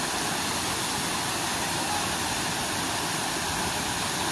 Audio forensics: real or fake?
real